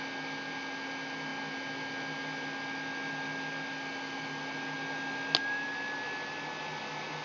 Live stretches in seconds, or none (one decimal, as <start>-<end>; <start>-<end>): 0.0-7.2